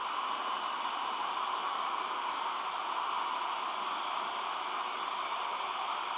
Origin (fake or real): real